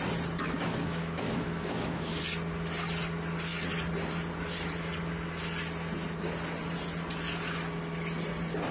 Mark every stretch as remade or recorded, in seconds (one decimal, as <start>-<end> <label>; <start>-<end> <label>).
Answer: 0.0-0.4 recorded; 0.4-2.2 remade; 2.2-8.7 recorded